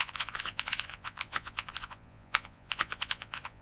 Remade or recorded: remade